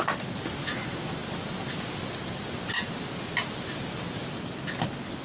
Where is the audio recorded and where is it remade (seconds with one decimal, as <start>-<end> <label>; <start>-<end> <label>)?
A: 0.0-5.2 recorded